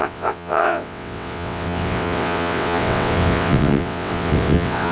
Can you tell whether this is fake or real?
fake